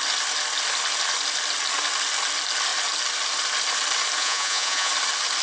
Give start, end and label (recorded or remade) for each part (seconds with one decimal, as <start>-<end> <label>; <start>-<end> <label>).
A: 0.0-4.2 recorded; 4.2-4.9 remade; 4.9-5.4 recorded